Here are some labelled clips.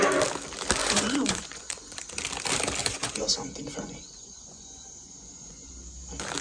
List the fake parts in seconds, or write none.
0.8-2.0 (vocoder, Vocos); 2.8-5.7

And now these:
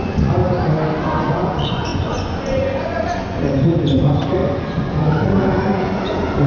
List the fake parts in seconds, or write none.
0.0-0.4 (vocoder, Vocos); 1.2-6.5

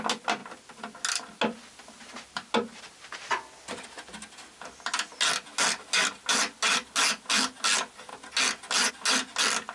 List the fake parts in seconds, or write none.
none